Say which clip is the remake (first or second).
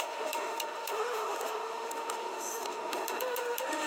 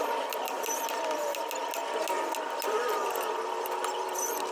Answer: first